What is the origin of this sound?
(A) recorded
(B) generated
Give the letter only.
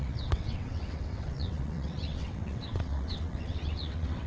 B